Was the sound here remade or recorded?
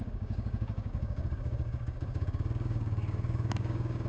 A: remade